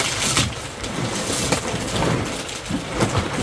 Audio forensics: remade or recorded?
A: recorded